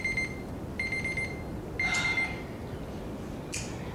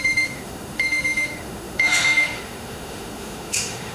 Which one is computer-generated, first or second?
second